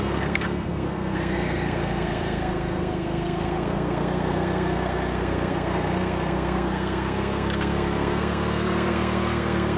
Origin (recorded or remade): remade